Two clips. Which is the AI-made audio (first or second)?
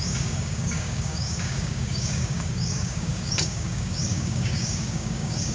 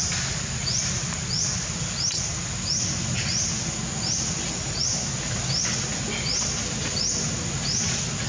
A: first